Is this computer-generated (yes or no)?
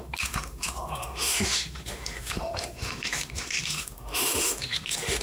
yes